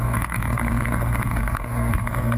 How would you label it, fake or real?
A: fake